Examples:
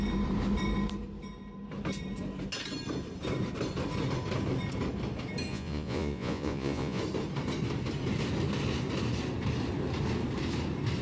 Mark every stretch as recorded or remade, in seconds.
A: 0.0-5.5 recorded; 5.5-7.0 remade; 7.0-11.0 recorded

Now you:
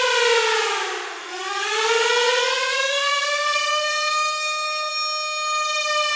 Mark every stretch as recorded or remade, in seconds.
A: 0.0-1.2 recorded; 1.2-4.9 remade; 4.9-6.2 recorded

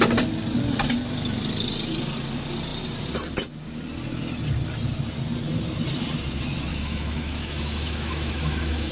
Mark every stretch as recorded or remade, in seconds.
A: 0.0-6.7 recorded; 6.7-8.9 remade

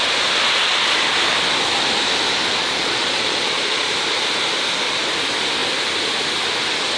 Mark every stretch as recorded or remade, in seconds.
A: 0.0-2.6 recorded; 2.6-3.9 remade; 3.9-7.0 recorded

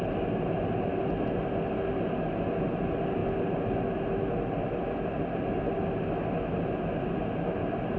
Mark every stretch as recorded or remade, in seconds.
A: 0.0-8.0 recorded

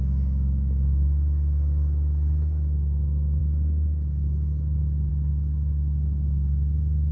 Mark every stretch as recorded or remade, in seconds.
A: 0.0-7.1 remade

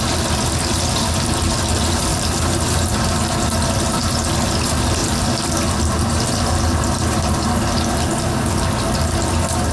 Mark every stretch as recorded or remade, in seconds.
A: 0.0-2.1 recorded; 2.1-4.3 remade; 4.3-5.0 recorded; 5.0-6.6 remade; 6.6-9.7 recorded